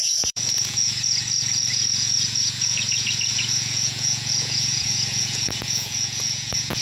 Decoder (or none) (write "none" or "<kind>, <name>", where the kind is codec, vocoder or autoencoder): vocoder, Vocos